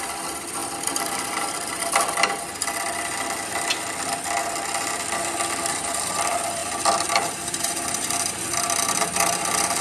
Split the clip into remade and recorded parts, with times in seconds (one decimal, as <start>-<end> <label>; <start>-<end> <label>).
0.0-1.8 remade; 1.8-5.9 recorded; 5.9-9.8 remade